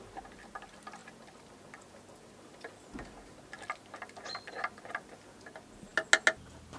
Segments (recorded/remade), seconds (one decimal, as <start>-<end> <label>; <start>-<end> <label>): 0.0-6.8 recorded